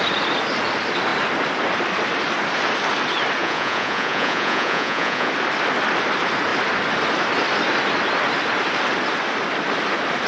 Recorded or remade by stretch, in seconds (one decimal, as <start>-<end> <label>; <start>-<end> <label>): 0.0-3.4 recorded; 3.4-5.3 remade; 5.3-10.3 recorded